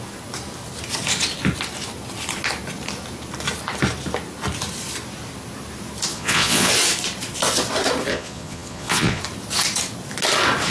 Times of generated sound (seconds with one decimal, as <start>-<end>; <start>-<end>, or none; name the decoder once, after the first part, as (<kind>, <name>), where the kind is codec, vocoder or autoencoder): 6.1-6.7 (vocoder, Vocos); 8.1-9.2